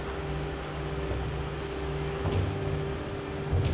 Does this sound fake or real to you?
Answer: real